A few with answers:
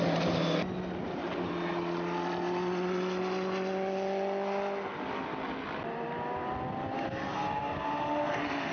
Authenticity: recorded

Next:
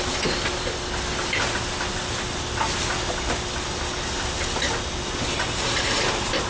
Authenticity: recorded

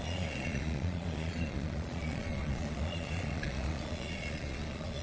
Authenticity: remade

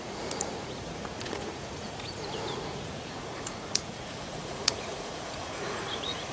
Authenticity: remade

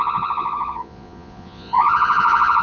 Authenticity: remade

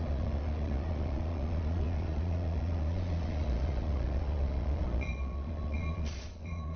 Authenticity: remade